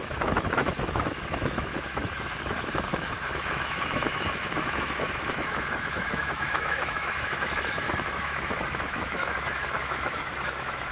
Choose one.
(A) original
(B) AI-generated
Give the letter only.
B